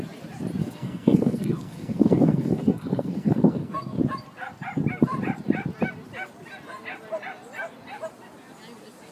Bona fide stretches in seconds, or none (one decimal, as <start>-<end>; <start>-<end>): 0.0-0.6; 4.0-9.1